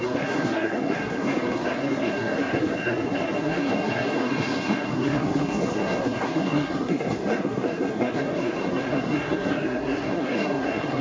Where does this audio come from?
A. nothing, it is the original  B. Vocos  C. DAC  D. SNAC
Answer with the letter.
D